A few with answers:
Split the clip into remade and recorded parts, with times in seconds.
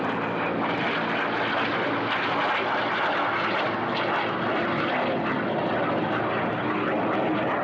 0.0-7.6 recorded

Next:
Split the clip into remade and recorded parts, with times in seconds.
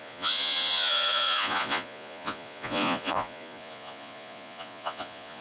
0.0-5.4 remade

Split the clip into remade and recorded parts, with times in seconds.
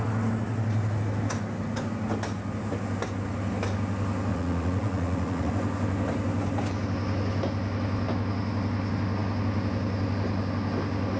0.0-4.3 recorded; 4.3-5.5 remade; 5.5-11.2 recorded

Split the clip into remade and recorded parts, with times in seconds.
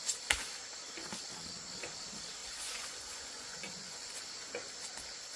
0.0-2.4 recorded; 2.4-4.2 remade; 4.2-5.4 recorded